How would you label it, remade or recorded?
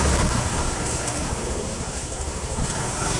remade